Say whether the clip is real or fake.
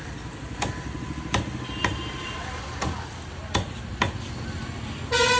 real